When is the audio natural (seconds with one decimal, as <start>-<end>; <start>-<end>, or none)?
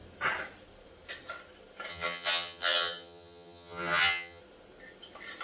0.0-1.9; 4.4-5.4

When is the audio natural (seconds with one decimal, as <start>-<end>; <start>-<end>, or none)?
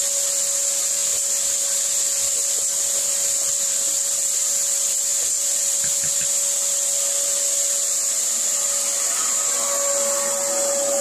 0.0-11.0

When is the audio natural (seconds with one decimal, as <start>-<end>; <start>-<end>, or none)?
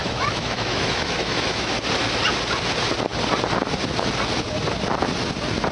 1.7-5.7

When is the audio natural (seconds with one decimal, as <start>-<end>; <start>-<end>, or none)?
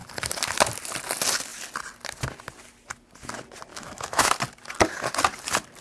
0.0-3.7; 4.3-5.8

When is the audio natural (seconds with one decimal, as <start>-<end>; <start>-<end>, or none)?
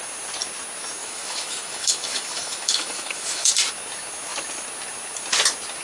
0.0-1.0; 3.5-5.8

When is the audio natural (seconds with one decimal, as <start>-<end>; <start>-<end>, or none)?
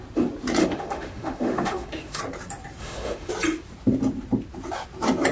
0.0-0.6; 2.2-2.8; 3.3-5.3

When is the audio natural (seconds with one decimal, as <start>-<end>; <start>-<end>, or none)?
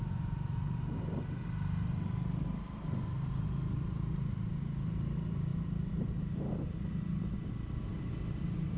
0.0-8.8